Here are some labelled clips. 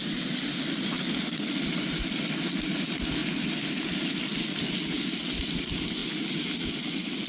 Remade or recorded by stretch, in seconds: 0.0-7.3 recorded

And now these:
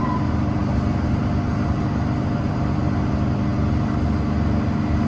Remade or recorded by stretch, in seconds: 0.0-5.1 recorded